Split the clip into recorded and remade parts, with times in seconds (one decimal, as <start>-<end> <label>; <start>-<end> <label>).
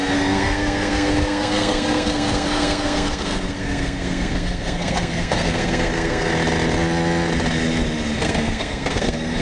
0.0-6.3 remade; 6.3-8.2 recorded; 8.2-9.4 remade